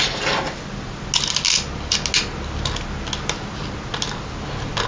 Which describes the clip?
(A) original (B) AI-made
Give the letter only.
A